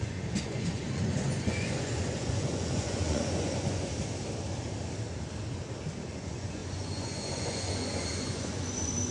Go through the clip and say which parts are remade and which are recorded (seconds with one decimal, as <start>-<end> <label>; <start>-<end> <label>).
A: 0.0-3.9 remade; 3.9-6.1 recorded; 6.1-9.1 remade